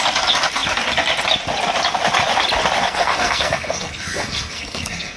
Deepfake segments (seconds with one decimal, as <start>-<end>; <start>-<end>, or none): 2.8-5.2